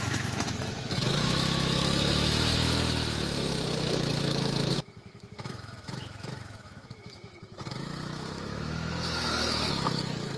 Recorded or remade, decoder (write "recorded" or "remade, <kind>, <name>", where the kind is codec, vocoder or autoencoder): remade, autoencoder, DAC-VAE